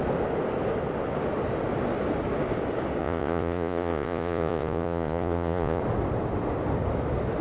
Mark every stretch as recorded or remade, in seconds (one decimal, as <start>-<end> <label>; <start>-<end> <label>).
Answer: 0.0-3.0 recorded; 3.0-5.8 remade; 5.8-7.4 recorded